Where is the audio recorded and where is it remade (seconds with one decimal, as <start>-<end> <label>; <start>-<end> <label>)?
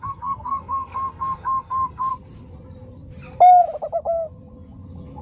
0.0-2.1 remade; 2.1-5.2 recorded